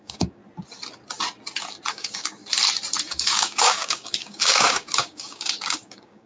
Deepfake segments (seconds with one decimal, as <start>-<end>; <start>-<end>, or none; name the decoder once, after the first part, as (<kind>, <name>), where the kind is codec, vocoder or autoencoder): 0.0-0.4 (codec, DAC); 1.9-2.4; 3.1-6.3